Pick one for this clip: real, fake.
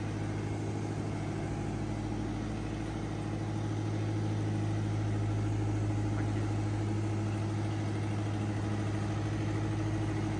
real